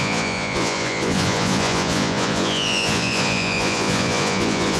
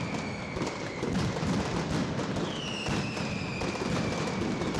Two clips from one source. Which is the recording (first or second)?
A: second